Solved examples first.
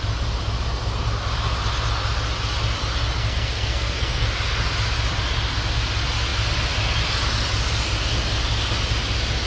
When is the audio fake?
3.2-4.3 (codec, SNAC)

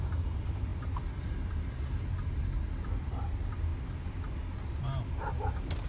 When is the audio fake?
none